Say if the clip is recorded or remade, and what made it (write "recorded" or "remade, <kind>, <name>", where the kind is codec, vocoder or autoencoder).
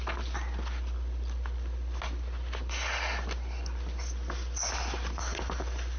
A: recorded